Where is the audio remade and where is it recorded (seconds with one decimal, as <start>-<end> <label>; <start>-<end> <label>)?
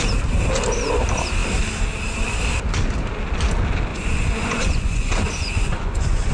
0.0-3.9 recorded; 3.9-6.3 remade